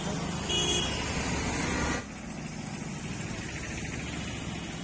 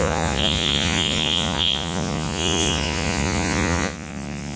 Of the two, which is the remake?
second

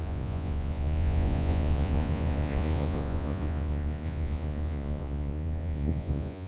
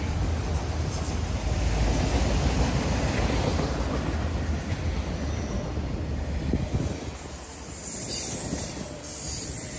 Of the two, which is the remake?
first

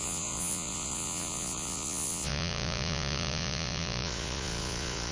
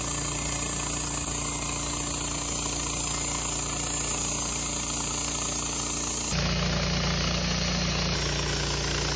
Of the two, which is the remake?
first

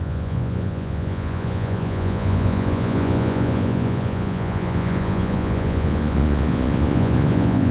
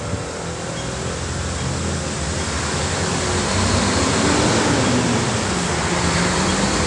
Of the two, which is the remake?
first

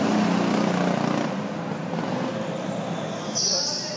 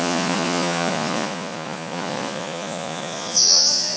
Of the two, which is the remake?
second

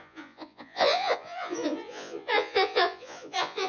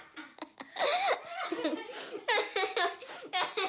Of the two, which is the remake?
first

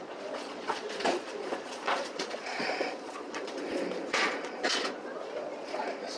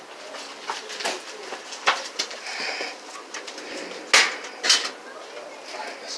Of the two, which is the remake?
first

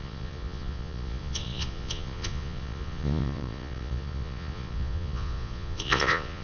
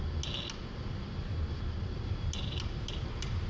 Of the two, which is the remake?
first